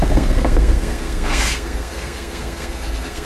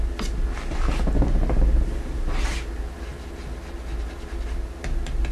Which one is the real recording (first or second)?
second